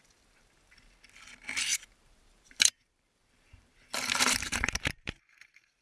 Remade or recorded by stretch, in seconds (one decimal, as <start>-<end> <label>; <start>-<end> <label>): 0.0-1.7 recorded; 1.7-5.2 remade; 5.2-5.8 recorded